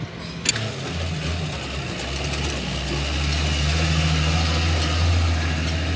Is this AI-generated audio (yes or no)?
no